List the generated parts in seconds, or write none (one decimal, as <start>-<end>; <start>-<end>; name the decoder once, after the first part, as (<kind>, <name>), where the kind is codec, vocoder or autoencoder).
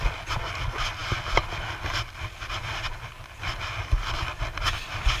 none